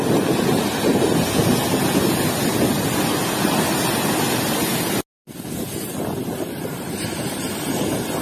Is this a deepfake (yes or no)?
no